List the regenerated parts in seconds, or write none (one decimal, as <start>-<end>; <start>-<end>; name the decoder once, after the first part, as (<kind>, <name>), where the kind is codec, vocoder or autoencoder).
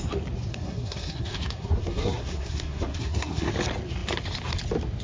0.5-3.5 (codec, SNAC)